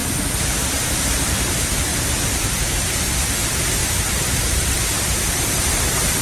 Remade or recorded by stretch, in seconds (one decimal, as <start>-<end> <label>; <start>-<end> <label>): 0.0-0.9 remade; 0.9-1.9 recorded; 1.9-2.5 remade; 2.5-3.8 recorded; 3.8-5.6 remade; 5.6-6.2 recorded